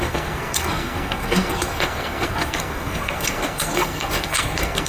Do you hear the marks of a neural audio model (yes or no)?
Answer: yes